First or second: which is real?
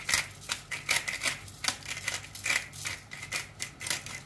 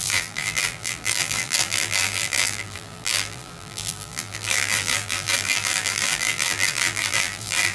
first